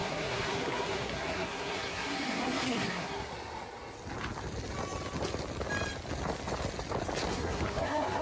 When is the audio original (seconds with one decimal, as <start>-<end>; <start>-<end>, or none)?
3.3-7.3